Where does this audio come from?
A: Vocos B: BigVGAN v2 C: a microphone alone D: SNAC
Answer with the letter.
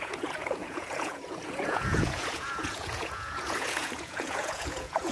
A